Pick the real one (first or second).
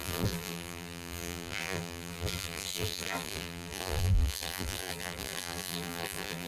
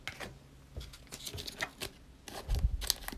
second